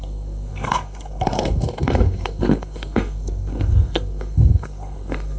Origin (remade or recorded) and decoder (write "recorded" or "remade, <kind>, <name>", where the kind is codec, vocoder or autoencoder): remade, codec, SNAC